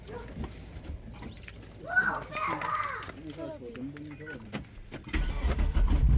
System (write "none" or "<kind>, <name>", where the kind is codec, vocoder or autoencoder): none